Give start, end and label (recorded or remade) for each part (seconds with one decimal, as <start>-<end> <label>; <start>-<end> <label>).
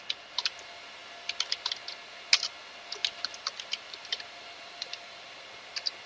0.0-3.0 recorded; 3.0-5.3 remade; 5.3-6.1 recorded